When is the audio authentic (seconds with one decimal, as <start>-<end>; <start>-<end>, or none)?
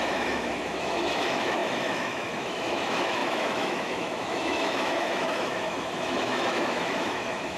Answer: none